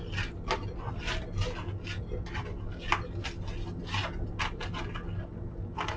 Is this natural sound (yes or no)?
yes